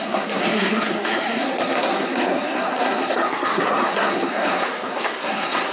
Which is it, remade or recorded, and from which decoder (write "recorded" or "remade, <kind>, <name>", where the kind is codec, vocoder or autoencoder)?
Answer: remade, codec, SNAC